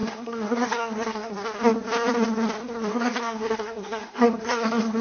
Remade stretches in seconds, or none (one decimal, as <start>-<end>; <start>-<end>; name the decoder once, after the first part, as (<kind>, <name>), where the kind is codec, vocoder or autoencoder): 0.0-1.3 (codec, SNAC); 2.9-5.0